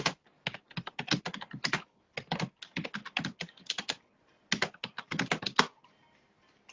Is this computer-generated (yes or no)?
no